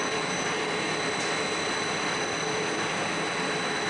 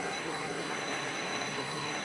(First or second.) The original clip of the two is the first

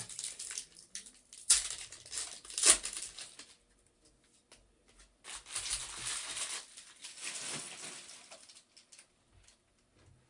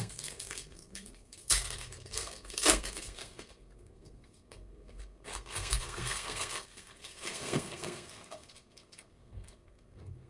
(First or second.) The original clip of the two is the first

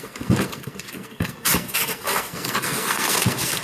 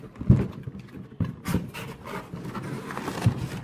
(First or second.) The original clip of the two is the second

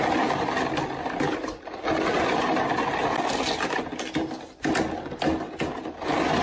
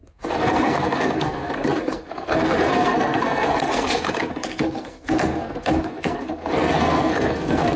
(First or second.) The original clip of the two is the first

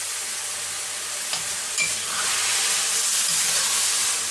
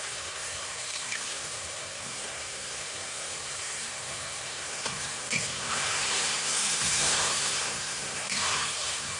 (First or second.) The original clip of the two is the first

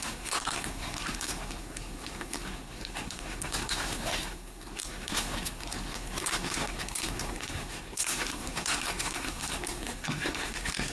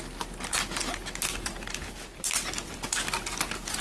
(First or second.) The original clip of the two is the second